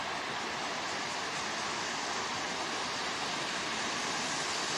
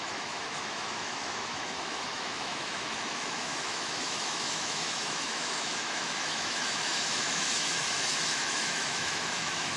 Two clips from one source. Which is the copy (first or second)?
second